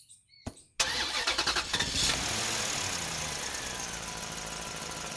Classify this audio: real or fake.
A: real